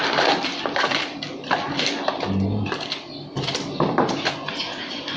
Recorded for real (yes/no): yes